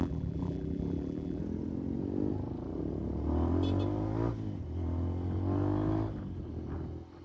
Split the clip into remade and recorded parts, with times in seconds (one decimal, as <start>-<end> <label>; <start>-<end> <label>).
0.0-1.4 remade; 1.4-7.2 recorded